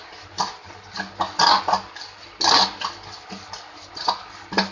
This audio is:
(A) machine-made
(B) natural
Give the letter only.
B